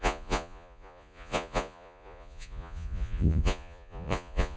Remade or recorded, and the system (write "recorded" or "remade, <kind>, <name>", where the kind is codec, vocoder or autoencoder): remade, vocoder, Vocos